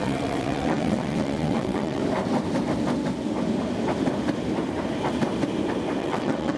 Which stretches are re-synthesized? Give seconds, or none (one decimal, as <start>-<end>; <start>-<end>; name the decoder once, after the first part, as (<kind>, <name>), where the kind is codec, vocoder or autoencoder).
0.0-2.0 (vocoder, WaveNeXt); 6.0-6.6

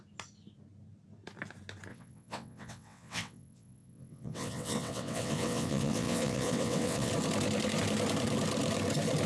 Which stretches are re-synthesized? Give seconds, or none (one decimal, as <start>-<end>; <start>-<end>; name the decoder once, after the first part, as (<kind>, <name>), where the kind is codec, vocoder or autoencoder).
1.9-7.1 (vocoder, WaveNeXt)